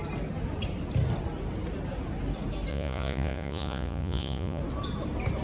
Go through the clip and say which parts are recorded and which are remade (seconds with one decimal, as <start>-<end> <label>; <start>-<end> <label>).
0.0-2.7 recorded; 2.7-4.6 remade; 4.6-5.4 recorded